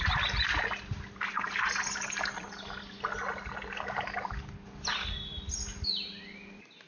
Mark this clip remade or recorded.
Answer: recorded